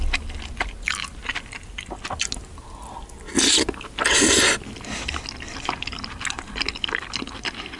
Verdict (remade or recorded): recorded